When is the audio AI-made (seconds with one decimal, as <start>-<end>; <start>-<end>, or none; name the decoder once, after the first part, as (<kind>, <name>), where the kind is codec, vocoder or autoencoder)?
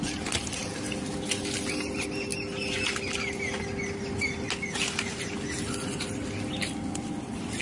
none